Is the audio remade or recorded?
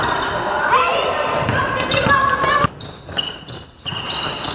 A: recorded